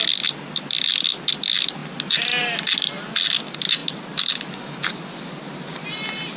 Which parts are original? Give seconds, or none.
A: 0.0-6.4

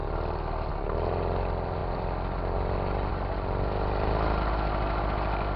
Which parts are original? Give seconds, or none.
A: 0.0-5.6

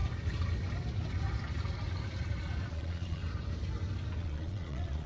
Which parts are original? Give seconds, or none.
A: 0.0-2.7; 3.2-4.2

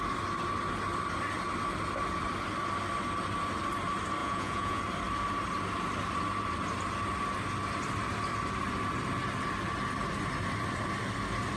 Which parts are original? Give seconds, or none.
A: 0.0-4.2; 4.8-11.6

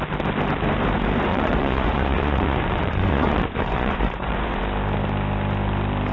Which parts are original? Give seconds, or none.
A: 0.0-1.3; 4.6-6.1

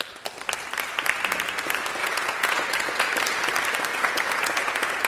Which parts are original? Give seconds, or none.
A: 0.0-2.0; 3.1-3.9

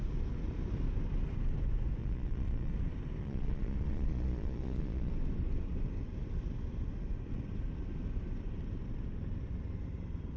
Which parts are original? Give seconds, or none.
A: 0.0-2.0; 2.7-3.2; 5.1-10.4